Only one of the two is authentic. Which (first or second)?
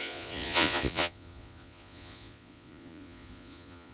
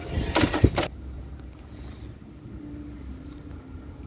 second